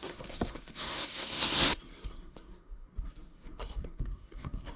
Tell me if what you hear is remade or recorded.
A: remade